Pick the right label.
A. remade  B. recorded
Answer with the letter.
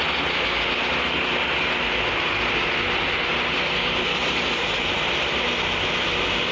B